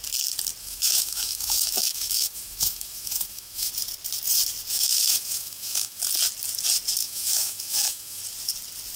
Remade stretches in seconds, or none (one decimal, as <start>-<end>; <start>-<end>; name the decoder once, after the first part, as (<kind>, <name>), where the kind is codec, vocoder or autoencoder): 0.6-3.7 (autoencoder, DAC-VAE); 4.7-6.0; 7.0-8.2